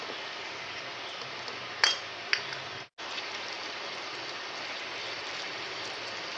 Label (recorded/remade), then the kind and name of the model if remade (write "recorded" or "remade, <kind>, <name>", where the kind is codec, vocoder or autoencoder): recorded